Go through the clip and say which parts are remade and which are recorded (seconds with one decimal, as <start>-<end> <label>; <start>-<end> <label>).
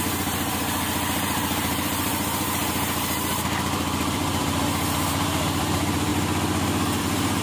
0.0-6.1 remade; 6.1-7.0 recorded; 7.0-7.4 remade